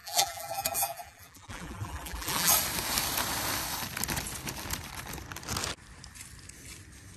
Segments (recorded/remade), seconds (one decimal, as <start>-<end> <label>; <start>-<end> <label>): 0.0-2.5 remade; 2.5-7.2 recorded